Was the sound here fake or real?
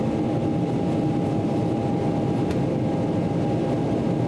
real